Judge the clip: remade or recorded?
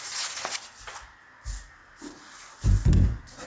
recorded